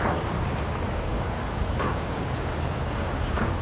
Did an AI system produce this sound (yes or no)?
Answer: yes